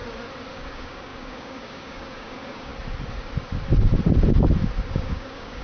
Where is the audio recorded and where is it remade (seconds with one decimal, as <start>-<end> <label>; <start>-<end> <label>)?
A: 0.0-0.5 recorded; 0.5-2.7 remade; 2.7-4.9 recorded; 4.9-5.6 remade